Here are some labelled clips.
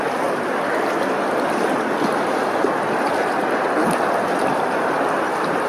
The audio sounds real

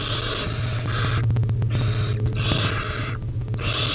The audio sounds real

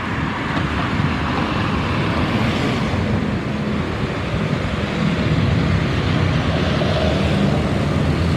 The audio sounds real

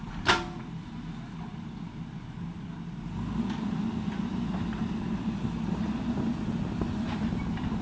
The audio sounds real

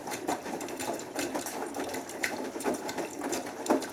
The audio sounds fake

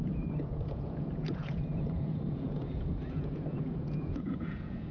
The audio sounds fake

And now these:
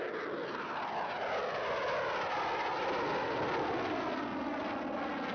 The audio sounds real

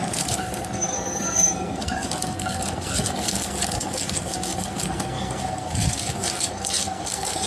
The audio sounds fake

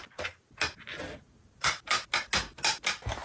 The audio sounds real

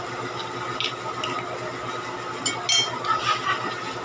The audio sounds real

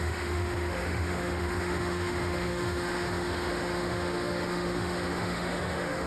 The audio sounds fake